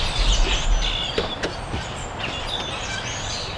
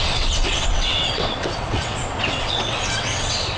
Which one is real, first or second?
first